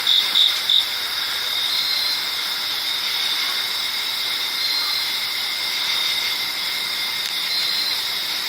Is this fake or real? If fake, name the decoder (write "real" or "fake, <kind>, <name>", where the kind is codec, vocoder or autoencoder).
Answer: fake, vocoder, BigVGAN v2